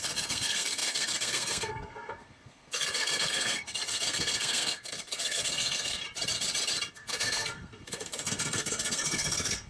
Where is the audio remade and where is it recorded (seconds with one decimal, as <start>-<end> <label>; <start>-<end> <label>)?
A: 0.0-6.0 remade; 6.0-6.9 recorded; 6.9-9.7 remade